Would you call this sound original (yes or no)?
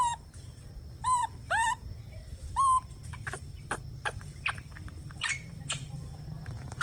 no